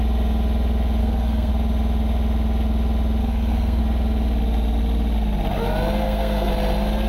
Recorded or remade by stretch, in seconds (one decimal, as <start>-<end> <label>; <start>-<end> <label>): 0.0-1.0 recorded; 1.0-1.5 remade; 1.5-3.2 recorded; 3.2-3.8 remade; 3.8-6.0 recorded; 6.0-6.5 remade; 6.5-7.1 recorded